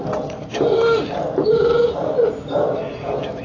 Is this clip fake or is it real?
real